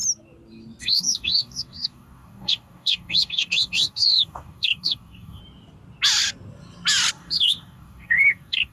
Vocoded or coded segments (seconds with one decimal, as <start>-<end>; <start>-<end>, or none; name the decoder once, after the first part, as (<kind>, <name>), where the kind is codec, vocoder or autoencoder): 0.8-5.4 (codec, DAC); 7.1-8.7